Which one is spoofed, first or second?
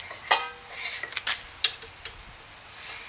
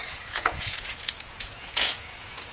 second